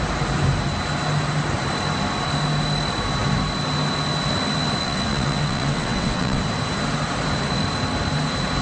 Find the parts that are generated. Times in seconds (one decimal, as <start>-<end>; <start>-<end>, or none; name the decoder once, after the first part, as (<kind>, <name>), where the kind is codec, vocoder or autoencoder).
4.8-6.4 (vocoder, WaveNeXt)